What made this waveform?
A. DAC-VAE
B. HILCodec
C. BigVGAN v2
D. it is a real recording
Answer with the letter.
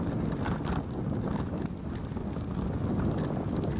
D